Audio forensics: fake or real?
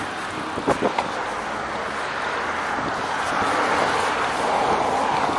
real